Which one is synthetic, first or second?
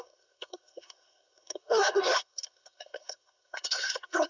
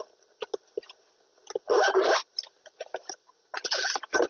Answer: first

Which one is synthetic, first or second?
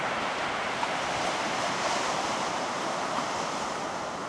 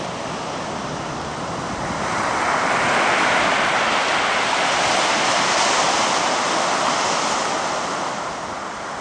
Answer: first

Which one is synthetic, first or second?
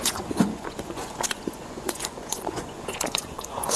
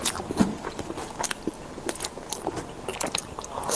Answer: first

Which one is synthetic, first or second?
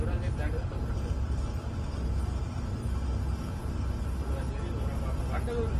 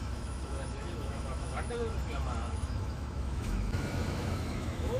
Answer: second